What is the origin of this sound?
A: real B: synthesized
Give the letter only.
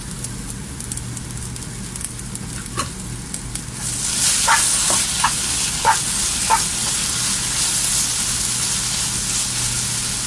A